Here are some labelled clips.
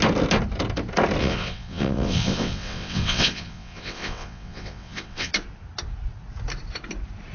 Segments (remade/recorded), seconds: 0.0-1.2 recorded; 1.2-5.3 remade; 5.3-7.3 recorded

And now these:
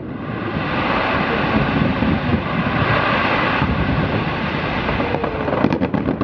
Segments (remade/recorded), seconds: 0.0-6.2 recorded

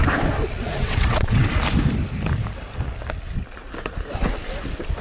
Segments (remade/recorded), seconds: 0.0-0.8 recorded; 0.8-1.5 remade; 1.5-5.0 recorded

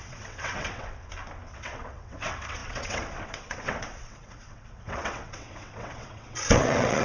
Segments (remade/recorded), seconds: 0.0-1.0 remade; 1.0-1.5 recorded; 1.5-7.0 remade

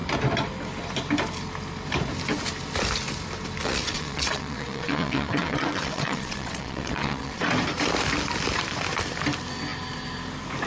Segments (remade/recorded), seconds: 0.0-3.6 recorded; 3.6-7.4 remade; 7.4-10.7 recorded

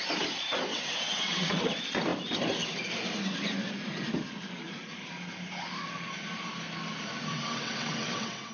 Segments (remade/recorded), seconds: 0.0-0.7 recorded; 0.7-1.6 remade; 1.6-7.3 recorded; 7.3-8.5 remade

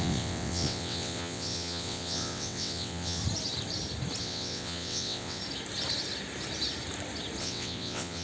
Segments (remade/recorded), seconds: 0.0-3.2 remade; 3.2-4.2 recorded; 4.2-5.4 remade; 5.4-7.4 recorded; 7.4-8.2 remade

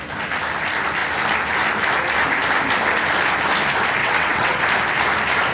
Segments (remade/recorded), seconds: 0.0-4.0 recorded; 4.0-4.6 remade; 4.6-5.5 recorded